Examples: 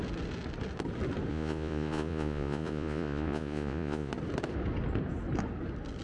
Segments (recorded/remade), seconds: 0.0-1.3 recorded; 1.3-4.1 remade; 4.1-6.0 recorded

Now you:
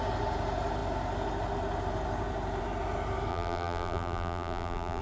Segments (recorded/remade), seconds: 0.0-3.3 recorded; 3.3-5.0 remade

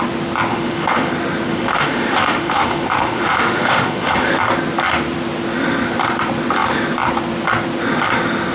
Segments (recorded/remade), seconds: 0.0-0.5 recorded; 0.5-1.1 remade; 1.1-1.5 recorded; 1.5-4.3 remade; 4.3-8.5 recorded

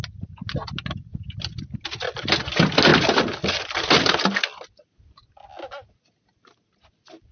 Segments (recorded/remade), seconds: 0.0-7.3 recorded

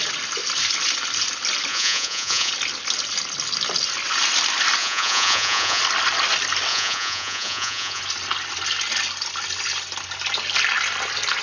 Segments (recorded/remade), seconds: 0.0-1.7 recorded; 1.7-2.5 remade; 2.5-4.8 recorded; 4.8-5.8 remade; 5.8-6.7 recorded; 6.7-8.0 remade; 8.0-11.4 recorded

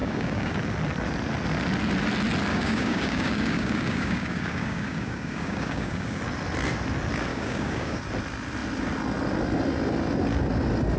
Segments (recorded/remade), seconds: 0.0-0.5 remade; 0.5-2.5 recorded; 2.5-6.2 remade; 6.2-7.3 recorded; 7.3-8.0 remade; 8.0-11.0 recorded